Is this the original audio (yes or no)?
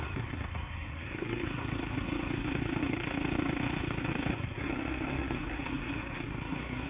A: no